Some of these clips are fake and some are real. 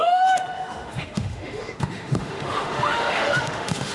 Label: fake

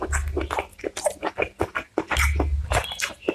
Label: real